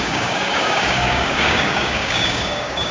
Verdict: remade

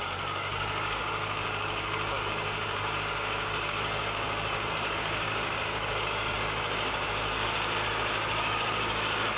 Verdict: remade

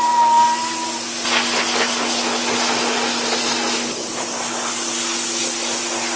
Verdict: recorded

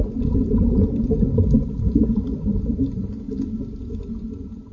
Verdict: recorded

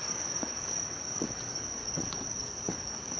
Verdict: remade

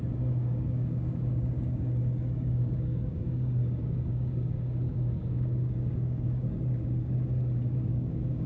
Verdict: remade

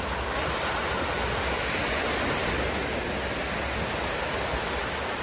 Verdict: recorded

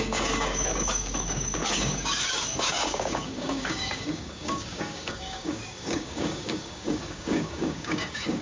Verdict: remade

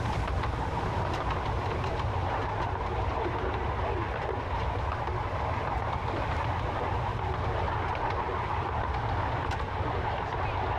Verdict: recorded